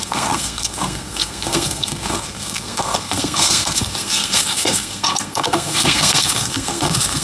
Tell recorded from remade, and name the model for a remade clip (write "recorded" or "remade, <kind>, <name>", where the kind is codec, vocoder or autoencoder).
remade, codec, SNAC